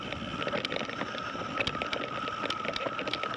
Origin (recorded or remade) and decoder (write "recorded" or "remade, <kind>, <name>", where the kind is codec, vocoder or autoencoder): recorded